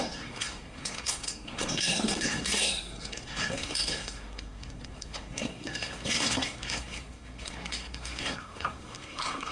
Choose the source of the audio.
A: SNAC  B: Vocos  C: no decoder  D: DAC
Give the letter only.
A